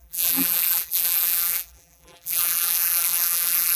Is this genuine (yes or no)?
no